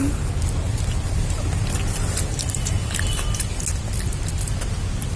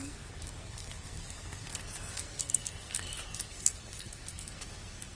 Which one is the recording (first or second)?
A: first